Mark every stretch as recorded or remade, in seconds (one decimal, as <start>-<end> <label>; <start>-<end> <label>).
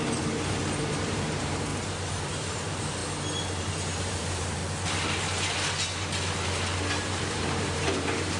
0.0-1.7 remade; 1.7-2.2 recorded; 2.2-3.0 remade; 3.0-3.6 recorded; 3.6-4.6 remade; 4.6-7.0 recorded; 7.0-8.4 remade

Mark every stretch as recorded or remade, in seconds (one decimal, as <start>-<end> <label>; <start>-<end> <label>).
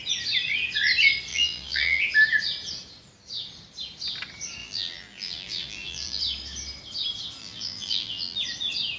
0.0-1.3 recorded; 1.3-2.0 remade; 2.0-4.6 recorded; 4.6-6.2 remade; 6.2-7.4 recorded; 7.4-8.4 remade; 8.4-9.0 recorded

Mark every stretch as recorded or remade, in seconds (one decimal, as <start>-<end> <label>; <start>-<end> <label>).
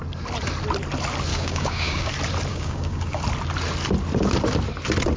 0.0-1.3 recorded; 1.3-2.1 remade; 2.1-2.5 recorded; 2.5-3.2 remade; 3.2-5.2 recorded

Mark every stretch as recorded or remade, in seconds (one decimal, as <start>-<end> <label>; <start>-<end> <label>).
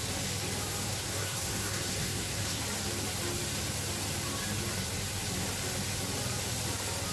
0.0-0.9 recorded; 0.9-2.6 remade; 2.6-7.1 recorded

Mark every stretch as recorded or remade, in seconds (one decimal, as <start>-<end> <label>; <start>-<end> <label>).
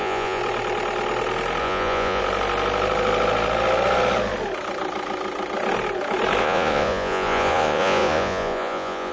0.0-0.4 remade; 0.4-1.6 recorded; 1.6-2.2 remade; 2.2-6.4 recorded; 6.4-9.1 remade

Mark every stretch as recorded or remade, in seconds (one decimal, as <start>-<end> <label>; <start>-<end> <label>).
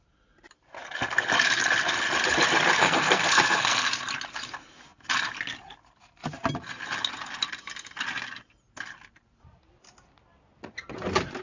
0.0-2.8 recorded; 2.8-3.9 remade; 3.9-11.4 recorded